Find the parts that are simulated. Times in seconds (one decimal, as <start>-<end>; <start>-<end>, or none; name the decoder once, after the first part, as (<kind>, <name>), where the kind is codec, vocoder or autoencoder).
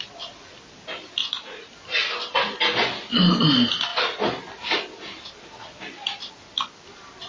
1.2-1.7 (vocoder, Vocos)